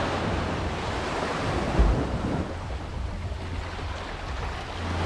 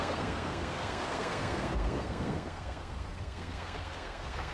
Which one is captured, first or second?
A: first